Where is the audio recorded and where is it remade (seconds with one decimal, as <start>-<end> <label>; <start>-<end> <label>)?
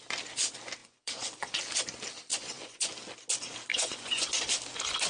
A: 0.0-0.8 recorded; 0.8-1.6 remade; 1.6-2.3 recorded; 2.3-2.9 remade; 2.9-3.7 recorded; 3.7-4.4 remade; 4.4-5.1 recorded